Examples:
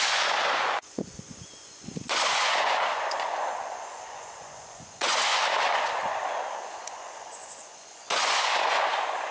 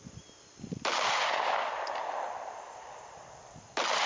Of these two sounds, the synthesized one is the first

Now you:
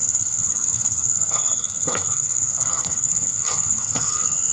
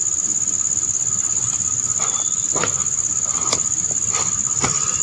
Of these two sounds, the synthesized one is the first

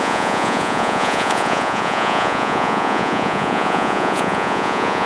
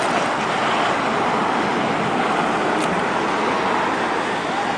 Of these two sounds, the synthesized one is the first